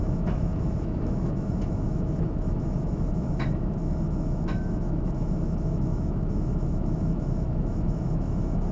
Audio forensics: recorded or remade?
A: remade